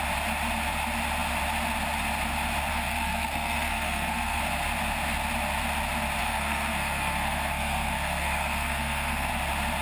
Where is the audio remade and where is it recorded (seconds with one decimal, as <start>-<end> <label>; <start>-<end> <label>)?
0.0-2.7 recorded; 2.7-4.4 remade; 4.4-6.2 recorded; 6.2-9.3 remade; 9.3-9.8 recorded